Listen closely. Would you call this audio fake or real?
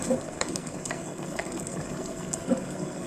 fake